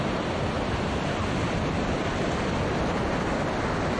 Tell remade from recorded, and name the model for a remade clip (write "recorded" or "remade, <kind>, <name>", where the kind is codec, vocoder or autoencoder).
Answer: recorded